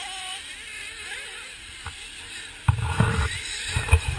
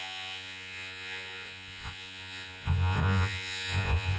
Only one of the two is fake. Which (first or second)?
second